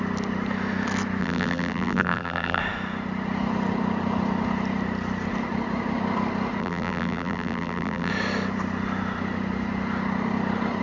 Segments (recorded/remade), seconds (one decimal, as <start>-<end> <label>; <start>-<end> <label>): 0.0-1.2 recorded; 1.2-2.6 remade; 2.6-6.6 recorded; 6.6-8.1 remade; 8.1-10.8 recorded